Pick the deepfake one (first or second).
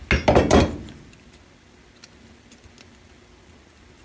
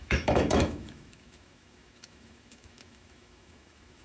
second